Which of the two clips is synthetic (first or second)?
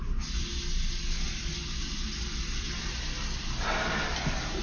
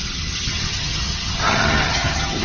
second